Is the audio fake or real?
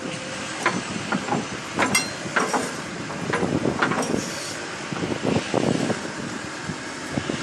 real